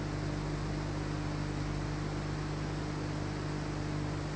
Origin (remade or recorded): recorded